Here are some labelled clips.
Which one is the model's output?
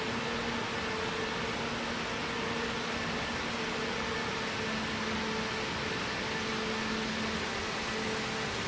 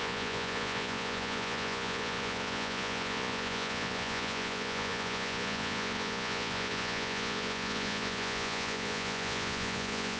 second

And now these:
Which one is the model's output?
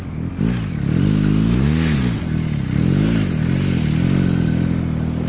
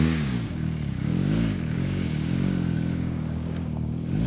second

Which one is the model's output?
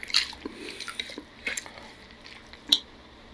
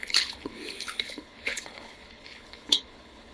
second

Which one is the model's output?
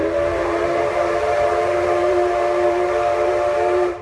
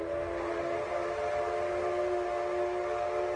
first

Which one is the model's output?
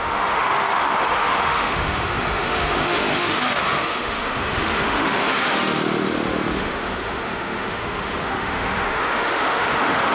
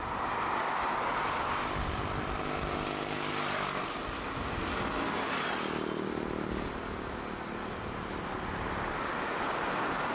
first